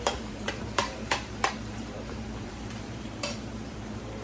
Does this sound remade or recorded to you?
remade